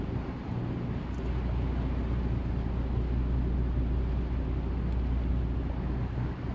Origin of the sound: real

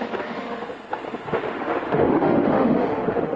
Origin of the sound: fake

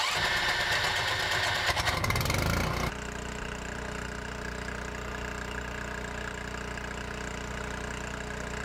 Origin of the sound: real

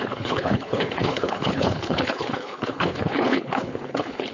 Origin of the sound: fake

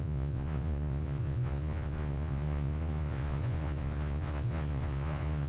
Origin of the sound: fake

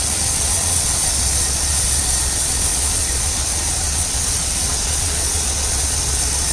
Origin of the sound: fake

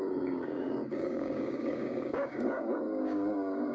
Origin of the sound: fake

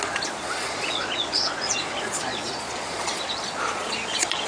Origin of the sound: fake